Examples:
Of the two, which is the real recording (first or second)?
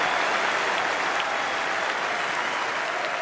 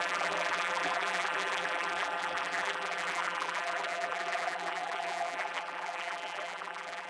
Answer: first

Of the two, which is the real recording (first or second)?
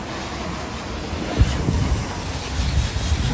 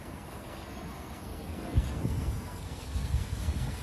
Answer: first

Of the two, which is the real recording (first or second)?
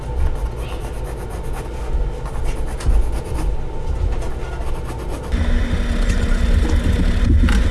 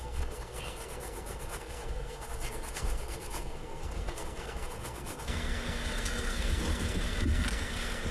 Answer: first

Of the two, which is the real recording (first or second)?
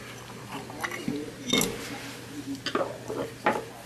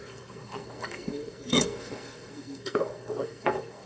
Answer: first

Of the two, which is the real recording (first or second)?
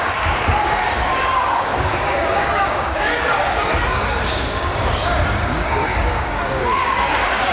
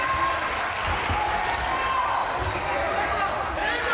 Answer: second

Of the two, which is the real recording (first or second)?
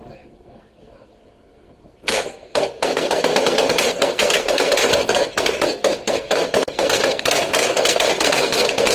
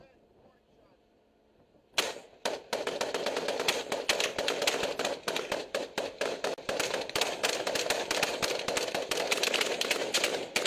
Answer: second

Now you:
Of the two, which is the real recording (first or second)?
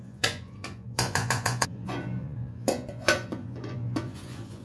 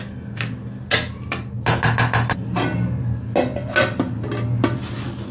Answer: second